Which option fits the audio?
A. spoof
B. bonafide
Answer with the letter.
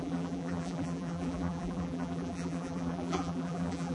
A